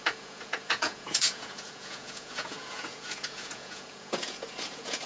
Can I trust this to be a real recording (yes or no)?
no